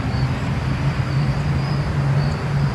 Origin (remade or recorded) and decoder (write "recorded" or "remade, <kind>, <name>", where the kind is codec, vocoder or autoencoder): remade, vocoder, BigVGAN v2